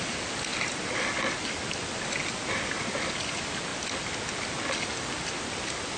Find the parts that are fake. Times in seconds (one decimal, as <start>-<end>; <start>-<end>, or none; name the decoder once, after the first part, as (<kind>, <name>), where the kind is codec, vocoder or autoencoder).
none